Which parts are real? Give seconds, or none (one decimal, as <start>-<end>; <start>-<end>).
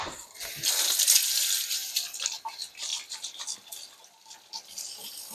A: 0.0-5.3